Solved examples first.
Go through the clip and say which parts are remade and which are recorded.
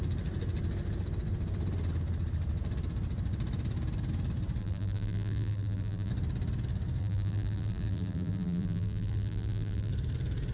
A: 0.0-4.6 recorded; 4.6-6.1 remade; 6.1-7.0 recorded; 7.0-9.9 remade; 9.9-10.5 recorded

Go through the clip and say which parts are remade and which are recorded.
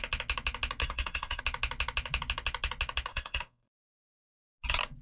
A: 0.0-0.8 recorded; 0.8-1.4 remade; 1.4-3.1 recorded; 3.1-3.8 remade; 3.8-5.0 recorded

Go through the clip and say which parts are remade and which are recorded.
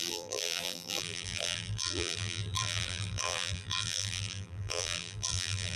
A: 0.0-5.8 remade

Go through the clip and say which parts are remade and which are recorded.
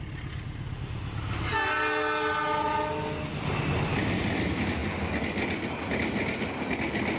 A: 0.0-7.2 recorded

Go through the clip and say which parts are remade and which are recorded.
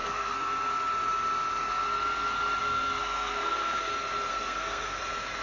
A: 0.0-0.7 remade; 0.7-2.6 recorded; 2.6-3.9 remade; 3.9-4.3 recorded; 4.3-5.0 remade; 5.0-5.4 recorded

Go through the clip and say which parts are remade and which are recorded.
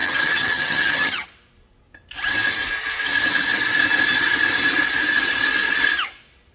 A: 0.0-1.3 remade; 1.3-6.5 recorded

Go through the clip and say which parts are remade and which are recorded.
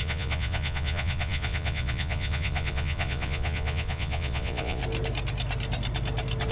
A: 0.0-4.8 remade; 4.8-6.5 recorded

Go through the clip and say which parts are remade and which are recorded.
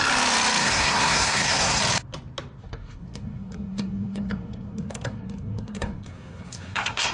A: 0.0-0.6 recorded; 0.6-1.8 remade; 1.8-2.6 recorded; 2.6-7.1 remade